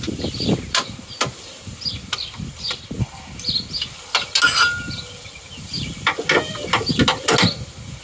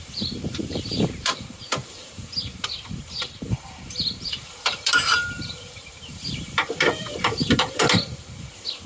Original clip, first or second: first